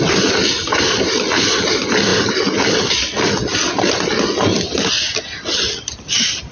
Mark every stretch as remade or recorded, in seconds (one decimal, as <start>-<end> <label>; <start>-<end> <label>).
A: 0.0-6.5 recorded